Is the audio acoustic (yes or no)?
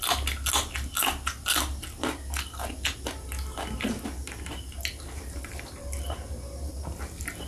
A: yes